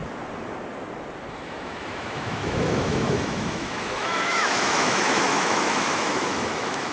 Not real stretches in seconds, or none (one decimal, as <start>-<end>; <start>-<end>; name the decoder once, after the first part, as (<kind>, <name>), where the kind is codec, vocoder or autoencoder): 1.3-6.9 (autoencoder, DAC-VAE)